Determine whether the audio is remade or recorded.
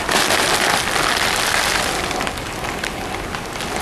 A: recorded